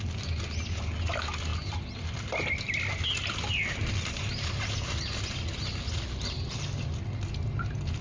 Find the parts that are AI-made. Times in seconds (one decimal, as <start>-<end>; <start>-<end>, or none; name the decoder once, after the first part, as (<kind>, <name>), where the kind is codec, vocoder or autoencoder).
none